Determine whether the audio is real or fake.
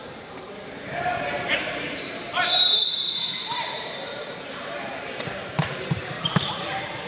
fake